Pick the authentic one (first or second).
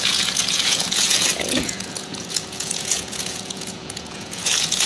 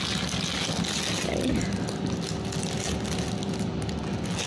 second